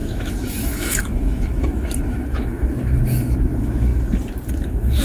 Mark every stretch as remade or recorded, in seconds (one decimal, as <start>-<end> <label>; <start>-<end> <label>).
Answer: 0.0-3.9 remade; 3.9-4.5 recorded; 4.5-5.0 remade